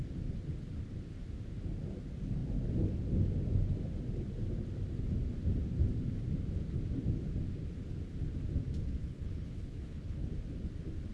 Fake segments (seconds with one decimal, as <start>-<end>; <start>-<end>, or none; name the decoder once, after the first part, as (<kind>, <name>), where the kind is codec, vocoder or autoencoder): 9.0-10.3 (codec, HILCodec)